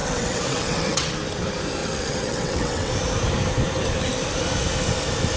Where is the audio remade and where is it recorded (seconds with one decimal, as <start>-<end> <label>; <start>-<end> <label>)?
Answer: 0.0-1.1 remade; 1.1-1.8 recorded; 1.8-2.9 remade; 2.9-5.4 recorded